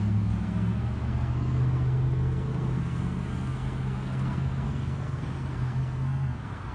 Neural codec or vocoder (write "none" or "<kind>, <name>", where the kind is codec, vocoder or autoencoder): codec, SNAC